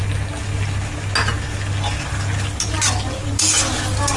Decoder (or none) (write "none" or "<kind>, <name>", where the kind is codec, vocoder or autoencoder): none